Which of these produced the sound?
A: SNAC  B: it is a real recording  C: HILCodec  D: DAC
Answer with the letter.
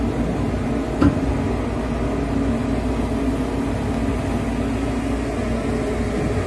B